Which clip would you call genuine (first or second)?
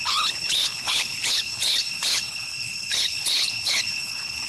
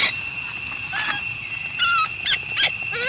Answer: second